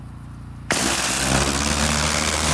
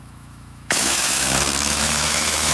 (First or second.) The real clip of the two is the first